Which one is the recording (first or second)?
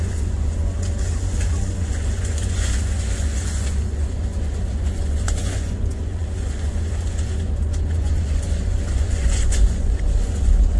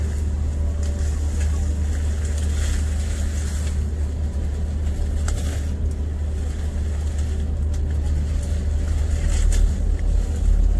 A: second